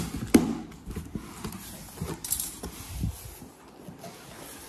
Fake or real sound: real